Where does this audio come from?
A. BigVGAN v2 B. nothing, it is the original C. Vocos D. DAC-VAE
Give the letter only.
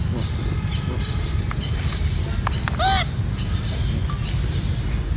B